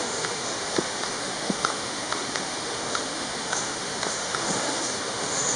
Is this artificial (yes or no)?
yes